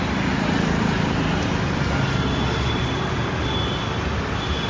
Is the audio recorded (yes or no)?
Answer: yes